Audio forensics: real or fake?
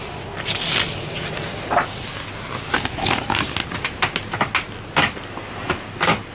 real